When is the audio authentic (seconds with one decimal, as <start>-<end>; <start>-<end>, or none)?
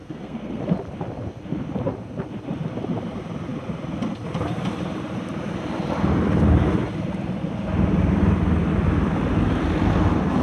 0.6-10.4